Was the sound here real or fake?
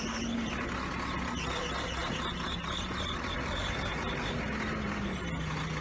real